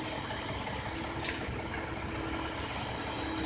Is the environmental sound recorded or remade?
recorded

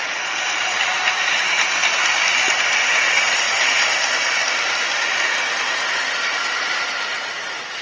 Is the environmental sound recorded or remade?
remade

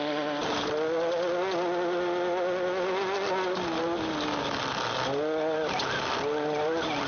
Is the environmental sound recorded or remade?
recorded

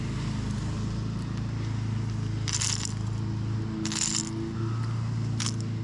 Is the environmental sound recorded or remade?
recorded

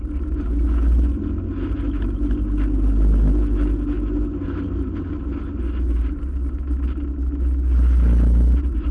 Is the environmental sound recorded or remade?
recorded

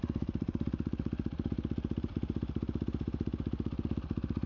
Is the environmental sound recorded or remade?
remade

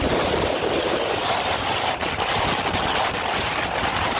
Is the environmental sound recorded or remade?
remade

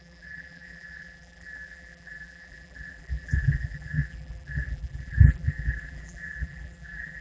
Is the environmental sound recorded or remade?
remade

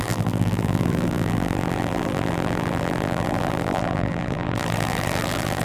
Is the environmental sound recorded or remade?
remade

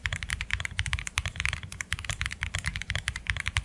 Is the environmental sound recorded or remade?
remade